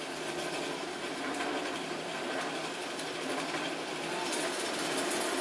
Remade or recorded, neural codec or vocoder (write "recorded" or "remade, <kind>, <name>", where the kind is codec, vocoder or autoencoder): remade, vocoder, BigVGAN v2